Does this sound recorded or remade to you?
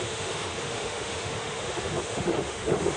remade